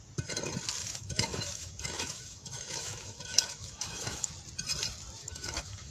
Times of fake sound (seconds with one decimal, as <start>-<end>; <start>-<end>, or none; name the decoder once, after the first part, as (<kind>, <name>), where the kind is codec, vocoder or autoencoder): 0.8-4.3 (autoencoder, DAC-VAE); 5.2-5.9

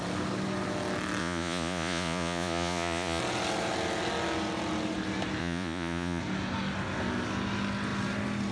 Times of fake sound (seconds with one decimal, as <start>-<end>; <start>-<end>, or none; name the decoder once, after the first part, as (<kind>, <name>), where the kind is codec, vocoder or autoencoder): 1.2-3.2 (vocoder, Vocos); 5.4-6.2